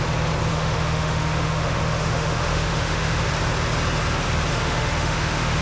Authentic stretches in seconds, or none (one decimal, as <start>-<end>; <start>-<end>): 0.0-0.5; 3.3-4.5